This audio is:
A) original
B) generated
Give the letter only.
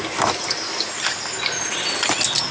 A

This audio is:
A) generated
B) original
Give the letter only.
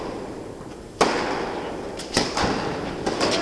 B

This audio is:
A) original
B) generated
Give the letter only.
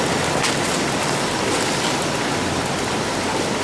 A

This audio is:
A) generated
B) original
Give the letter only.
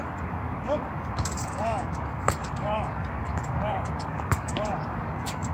A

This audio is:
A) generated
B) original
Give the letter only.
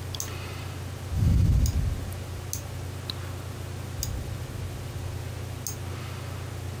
B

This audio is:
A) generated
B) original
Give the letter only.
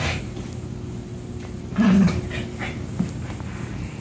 B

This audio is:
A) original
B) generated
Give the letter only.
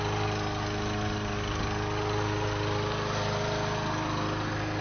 A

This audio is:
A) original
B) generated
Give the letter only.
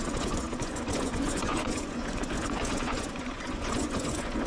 B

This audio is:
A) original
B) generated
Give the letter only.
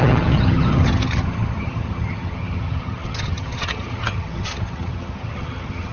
B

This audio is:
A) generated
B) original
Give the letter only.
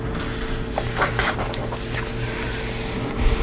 B